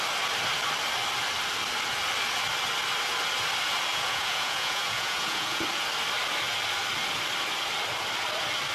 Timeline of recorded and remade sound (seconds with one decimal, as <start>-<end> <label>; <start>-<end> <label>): 0.0-3.9 recorded; 3.9-5.6 remade; 5.6-8.7 recorded